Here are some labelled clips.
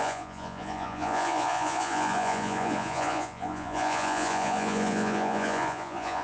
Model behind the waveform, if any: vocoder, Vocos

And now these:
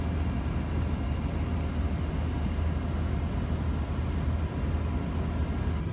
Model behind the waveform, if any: none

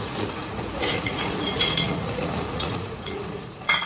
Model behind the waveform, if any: vocoder, Vocos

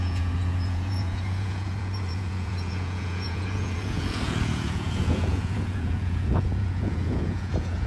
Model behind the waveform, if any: vocoder, Vocos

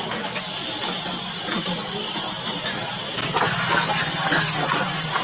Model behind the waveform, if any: none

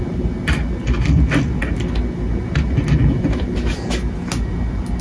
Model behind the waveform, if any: none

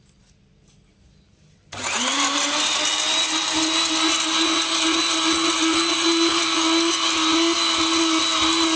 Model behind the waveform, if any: none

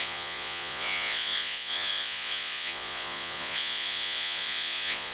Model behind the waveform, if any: vocoder, Vocos